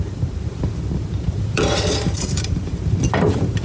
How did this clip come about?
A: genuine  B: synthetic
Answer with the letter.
B